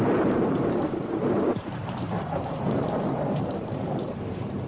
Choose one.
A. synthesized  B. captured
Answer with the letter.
A